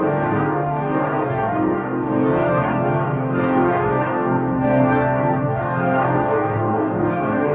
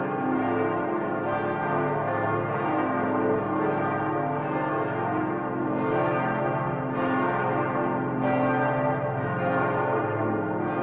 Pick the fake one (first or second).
first